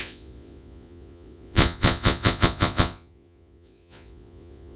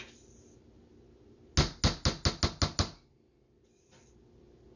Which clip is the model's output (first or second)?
first